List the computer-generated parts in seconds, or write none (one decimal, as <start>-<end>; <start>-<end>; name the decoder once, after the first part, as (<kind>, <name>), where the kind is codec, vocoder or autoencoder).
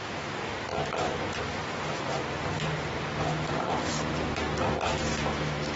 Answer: 5.1-5.8 (autoencoder, DAC-VAE)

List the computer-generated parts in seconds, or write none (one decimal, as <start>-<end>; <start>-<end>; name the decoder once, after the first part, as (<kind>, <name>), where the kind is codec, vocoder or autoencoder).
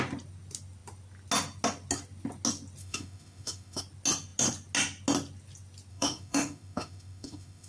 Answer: 2.8-3.8 (autoencoder, DAC-VAE); 5.9-7.7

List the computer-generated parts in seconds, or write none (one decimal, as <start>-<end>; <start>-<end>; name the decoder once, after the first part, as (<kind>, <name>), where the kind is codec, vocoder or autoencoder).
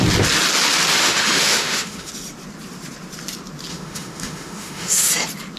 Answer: 0.9-2.1 (autoencoder, DAC-VAE); 3.7-5.1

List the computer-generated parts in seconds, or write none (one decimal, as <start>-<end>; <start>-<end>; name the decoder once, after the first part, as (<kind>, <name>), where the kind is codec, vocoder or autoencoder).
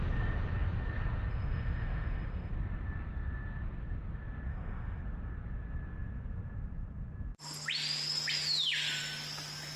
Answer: 1.3-2.5 (autoencoder, DAC-VAE); 4.5-5.0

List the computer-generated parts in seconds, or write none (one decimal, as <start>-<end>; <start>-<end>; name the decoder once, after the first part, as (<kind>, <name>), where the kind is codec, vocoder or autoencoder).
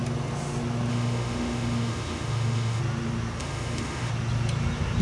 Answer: 0.9-2.8 (autoencoder, DAC-VAE); 3.4-4.1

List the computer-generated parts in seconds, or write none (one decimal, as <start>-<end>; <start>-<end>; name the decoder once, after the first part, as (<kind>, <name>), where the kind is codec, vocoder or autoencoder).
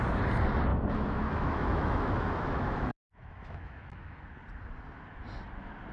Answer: 0.7-4.2 (autoencoder, DAC-VAE)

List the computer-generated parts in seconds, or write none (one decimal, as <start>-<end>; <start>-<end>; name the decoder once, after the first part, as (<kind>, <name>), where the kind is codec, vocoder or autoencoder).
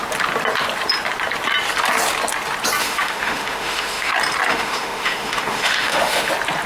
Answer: 2.8-4.1 (autoencoder, DAC-VAE); 4.5-6.3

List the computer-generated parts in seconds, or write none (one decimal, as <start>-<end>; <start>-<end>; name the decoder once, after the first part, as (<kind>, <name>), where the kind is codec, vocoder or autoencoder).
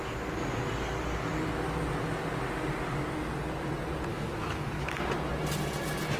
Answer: 4.1-4.7 (autoencoder, DAC-VAE)